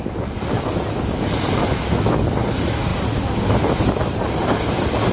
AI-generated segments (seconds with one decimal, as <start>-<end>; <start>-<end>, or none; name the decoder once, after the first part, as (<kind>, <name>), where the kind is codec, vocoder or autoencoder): 1.6-2.2 (autoencoder, DAC-VAE)